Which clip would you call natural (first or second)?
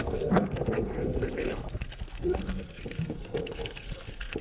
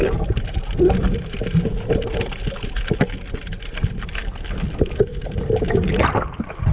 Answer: second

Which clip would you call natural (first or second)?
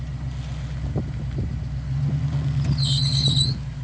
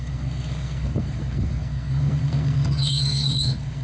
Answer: first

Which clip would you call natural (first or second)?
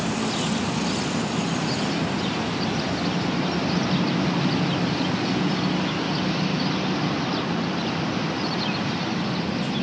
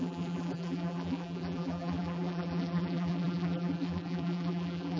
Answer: first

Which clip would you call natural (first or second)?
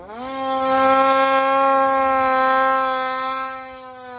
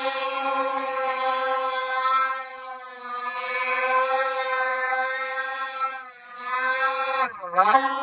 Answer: first